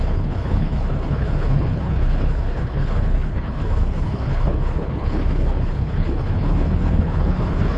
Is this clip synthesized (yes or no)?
yes